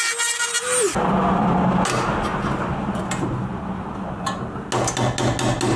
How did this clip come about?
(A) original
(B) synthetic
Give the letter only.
A